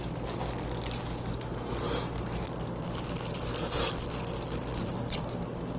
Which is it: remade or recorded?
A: recorded